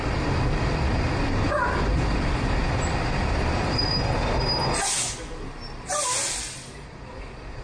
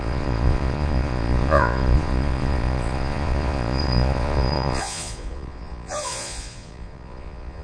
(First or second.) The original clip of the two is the first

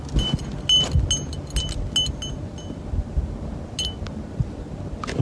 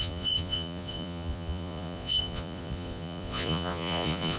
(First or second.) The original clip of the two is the first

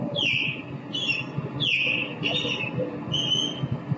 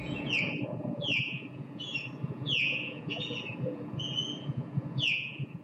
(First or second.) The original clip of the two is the first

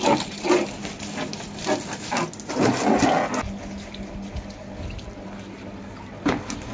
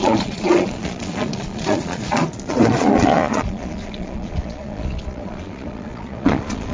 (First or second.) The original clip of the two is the first